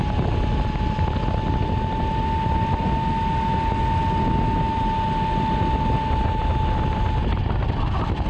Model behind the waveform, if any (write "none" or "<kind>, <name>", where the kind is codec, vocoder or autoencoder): none